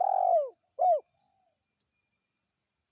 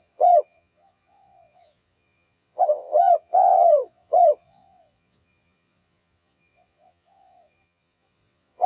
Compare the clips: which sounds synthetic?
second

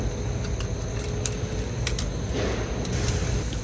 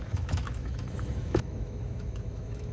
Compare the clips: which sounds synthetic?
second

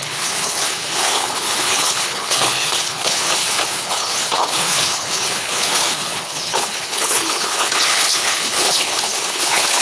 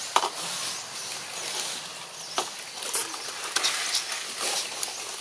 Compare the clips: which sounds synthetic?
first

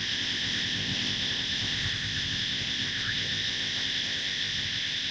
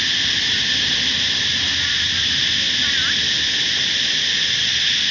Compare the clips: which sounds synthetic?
first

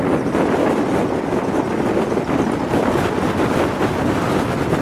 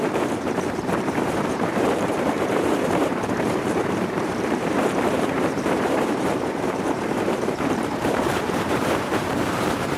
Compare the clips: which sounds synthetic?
second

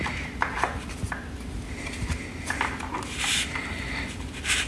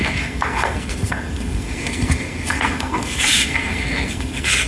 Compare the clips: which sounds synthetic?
second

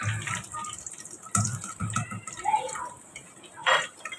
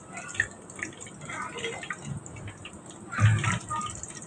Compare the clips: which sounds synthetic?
first